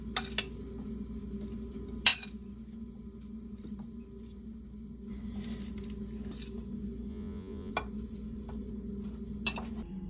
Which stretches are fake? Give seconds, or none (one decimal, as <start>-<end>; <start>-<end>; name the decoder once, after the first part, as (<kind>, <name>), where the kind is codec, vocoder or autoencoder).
7.1-7.7 (vocoder, Vocos)